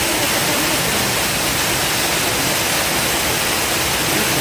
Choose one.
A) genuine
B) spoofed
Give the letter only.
A